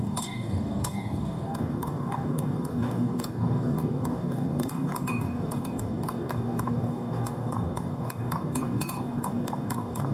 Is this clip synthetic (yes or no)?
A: yes